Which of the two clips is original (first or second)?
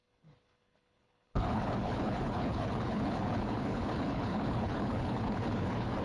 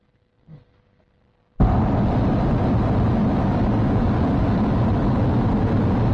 second